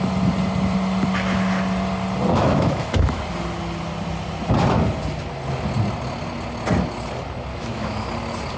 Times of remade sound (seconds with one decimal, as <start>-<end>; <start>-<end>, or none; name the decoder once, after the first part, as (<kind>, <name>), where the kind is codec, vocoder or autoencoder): 2.3-3.2 (autoencoder, DAC-VAE); 7.5-8.1